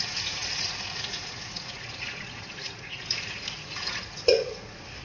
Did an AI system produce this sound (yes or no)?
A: yes